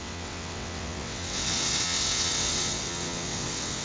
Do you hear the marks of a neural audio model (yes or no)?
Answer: yes